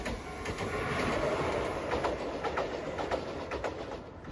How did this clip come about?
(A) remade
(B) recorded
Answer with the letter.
B